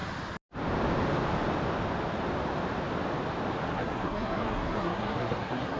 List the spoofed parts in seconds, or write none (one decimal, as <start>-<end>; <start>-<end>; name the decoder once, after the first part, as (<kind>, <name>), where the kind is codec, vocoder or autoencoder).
3.7-5.8 (codec, SNAC)